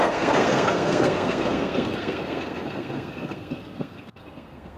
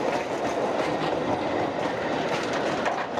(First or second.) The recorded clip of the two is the second